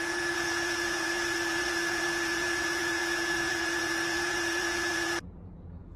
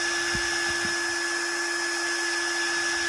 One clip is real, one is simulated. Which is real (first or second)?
second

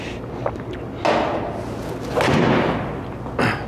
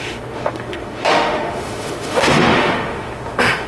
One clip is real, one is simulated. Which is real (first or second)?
first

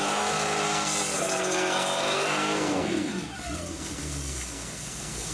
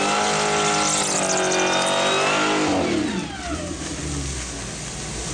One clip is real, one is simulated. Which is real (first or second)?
second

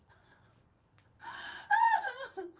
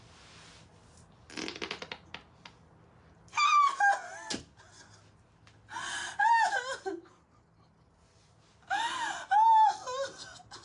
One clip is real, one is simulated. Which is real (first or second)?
second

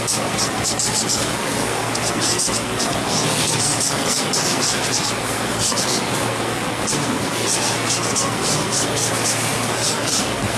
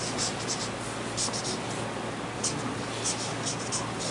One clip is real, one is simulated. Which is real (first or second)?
second